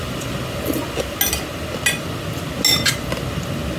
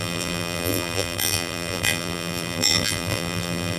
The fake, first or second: second